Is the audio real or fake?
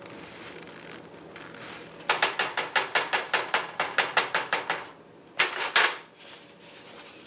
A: real